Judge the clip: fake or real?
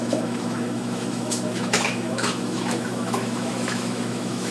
fake